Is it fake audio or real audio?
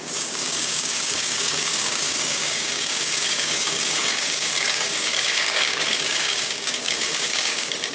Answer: fake